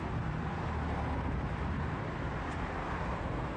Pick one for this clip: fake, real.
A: real